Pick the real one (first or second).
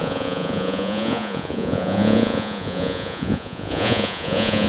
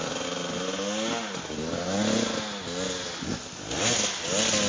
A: second